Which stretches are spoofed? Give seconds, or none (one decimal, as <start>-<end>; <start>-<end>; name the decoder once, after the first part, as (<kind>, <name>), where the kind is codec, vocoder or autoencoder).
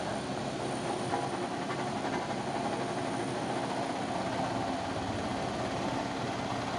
none